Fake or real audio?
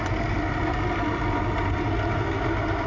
real